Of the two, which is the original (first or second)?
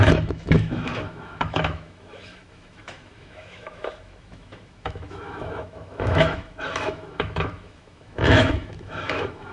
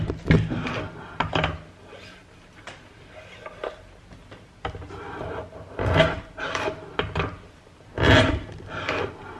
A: second